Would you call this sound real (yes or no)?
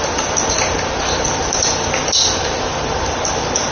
yes